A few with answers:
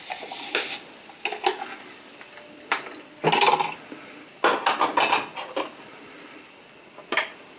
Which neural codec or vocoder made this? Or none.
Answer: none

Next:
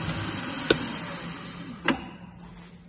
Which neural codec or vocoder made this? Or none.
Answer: none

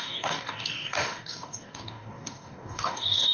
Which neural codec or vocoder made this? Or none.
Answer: codec, DAC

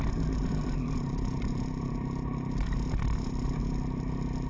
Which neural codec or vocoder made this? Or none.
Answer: none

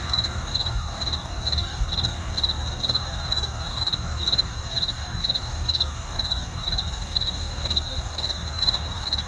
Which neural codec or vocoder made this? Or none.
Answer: codec, DAC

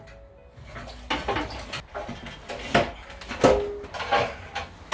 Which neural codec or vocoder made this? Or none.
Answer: none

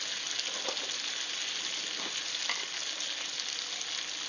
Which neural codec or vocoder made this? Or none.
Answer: none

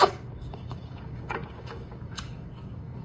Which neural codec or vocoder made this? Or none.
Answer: codec, DAC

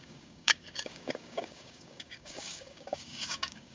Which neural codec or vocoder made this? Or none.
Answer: codec, DAC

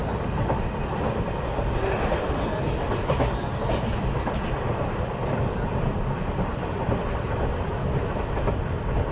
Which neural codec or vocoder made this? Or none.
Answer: none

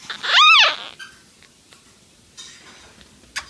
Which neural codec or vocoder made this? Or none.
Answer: none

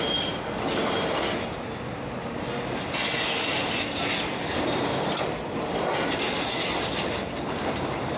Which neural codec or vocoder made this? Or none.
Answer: none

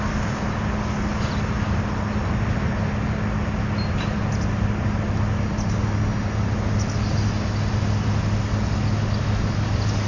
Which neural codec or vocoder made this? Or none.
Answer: none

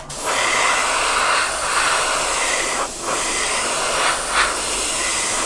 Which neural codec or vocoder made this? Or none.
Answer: none